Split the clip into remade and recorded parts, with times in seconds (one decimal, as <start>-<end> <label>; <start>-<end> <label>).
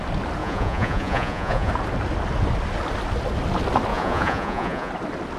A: 0.0-0.4 recorded; 0.4-1.7 remade; 1.7-3.9 recorded; 3.9-4.9 remade; 4.9-5.4 recorded